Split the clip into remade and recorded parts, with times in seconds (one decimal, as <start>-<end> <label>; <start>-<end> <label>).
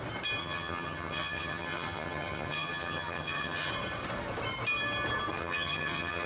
0.0-0.4 recorded; 0.4-3.7 remade; 3.7-5.3 recorded; 5.3-6.3 remade